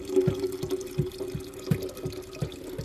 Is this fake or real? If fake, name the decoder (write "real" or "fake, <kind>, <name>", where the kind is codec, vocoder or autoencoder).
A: real